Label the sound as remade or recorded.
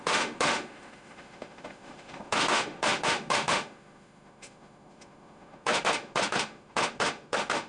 remade